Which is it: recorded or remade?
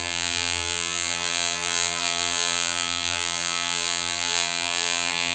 remade